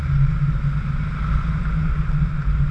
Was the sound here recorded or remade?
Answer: recorded